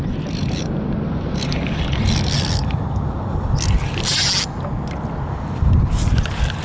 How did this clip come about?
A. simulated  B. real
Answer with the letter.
B